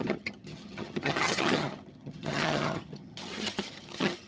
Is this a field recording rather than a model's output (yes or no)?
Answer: no